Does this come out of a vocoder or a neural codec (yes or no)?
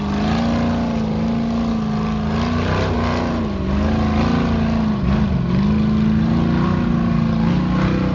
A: no